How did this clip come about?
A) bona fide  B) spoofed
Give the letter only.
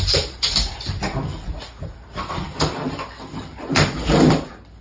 B